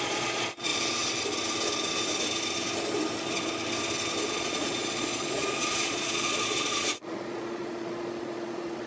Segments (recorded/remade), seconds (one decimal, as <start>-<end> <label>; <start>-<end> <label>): 0.0-0.7 remade; 0.7-4.3 recorded; 4.3-8.9 remade